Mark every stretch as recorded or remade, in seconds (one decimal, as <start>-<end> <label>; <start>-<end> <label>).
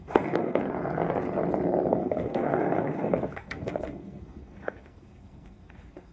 0.0-0.6 remade; 0.6-1.9 recorded; 1.9-6.1 remade